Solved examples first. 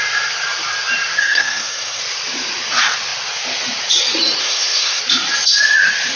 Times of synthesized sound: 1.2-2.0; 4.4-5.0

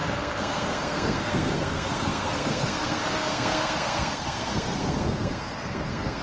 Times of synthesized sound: 0.0-6.2